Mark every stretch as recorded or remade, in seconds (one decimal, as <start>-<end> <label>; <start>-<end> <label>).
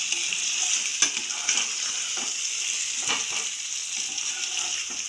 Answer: 0.0-5.1 recorded